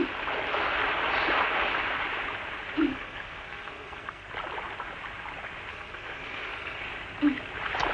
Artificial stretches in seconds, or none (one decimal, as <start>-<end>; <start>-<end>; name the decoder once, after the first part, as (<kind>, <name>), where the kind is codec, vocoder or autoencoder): 2.9-4.3 (codec, SNAC); 5.7-6.8